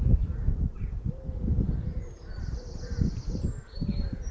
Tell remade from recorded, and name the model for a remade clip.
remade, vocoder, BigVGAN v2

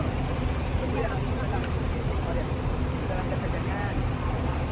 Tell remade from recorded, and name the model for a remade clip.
remade, vocoder, BigVGAN v2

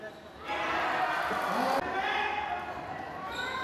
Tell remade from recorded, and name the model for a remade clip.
recorded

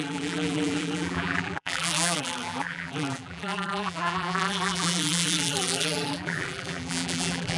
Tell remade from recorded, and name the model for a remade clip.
remade, vocoder, BigVGAN v2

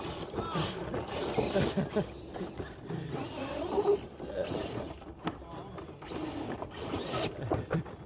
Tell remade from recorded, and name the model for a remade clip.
remade, vocoder, BigVGAN v2